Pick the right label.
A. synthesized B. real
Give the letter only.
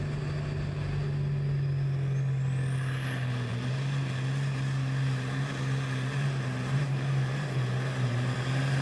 B